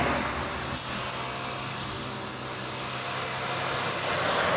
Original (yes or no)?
yes